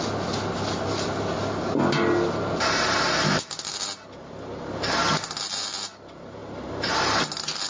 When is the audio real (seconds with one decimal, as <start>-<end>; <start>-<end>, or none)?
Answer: 0.0-7.7